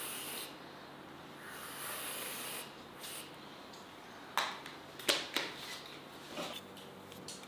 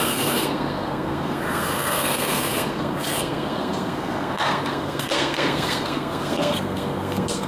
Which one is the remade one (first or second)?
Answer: second